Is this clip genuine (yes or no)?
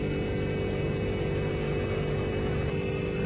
yes